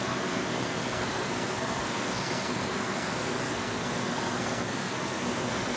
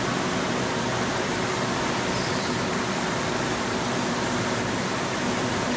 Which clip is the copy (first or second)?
first